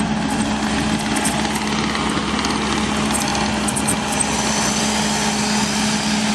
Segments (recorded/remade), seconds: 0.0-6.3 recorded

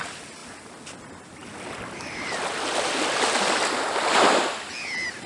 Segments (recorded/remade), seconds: 0.0-5.3 recorded